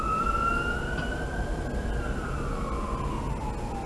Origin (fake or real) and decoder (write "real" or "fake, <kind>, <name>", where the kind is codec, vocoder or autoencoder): real